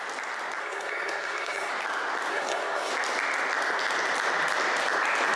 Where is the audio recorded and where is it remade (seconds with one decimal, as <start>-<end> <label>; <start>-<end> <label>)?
0.0-0.6 recorded; 0.6-1.7 remade; 1.7-2.3 recorded; 2.3-2.9 remade; 2.9-5.4 recorded